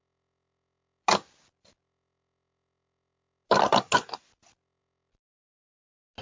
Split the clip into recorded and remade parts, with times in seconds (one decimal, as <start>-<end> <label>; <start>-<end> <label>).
0.0-6.2 recorded